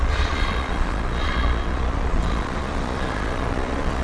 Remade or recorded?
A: remade